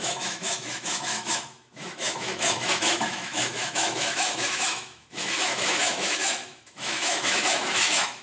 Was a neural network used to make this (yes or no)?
yes